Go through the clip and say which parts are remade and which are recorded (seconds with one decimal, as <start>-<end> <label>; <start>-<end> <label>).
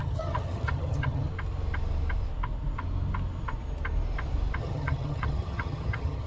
0.0-1.3 remade; 1.3-4.6 recorded; 4.6-6.3 remade